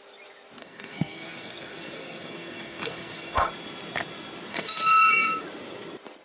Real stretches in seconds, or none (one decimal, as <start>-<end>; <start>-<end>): 0.0-0.6; 3.5-4.5; 5.4-6.2